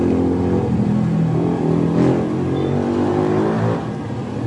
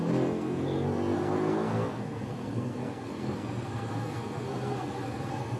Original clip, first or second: first